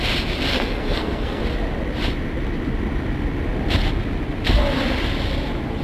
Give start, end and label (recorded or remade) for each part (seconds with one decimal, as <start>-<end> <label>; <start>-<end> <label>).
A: 0.0-0.5 recorded; 0.5-1.4 remade; 1.4-5.8 recorded